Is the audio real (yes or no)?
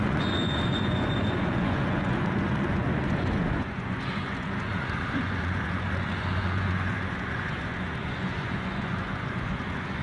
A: no